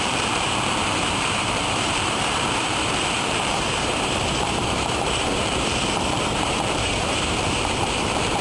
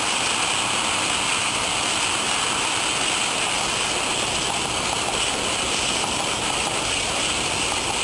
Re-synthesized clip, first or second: first